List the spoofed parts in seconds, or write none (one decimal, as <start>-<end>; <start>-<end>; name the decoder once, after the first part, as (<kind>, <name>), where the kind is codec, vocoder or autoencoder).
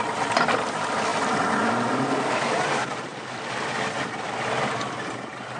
none